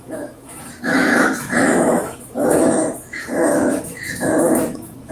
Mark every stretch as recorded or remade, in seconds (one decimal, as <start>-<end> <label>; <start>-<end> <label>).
0.0-5.1 remade